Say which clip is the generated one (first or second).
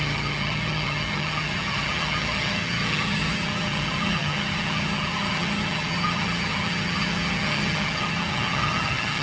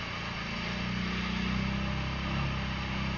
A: first